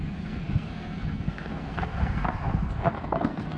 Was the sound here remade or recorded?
remade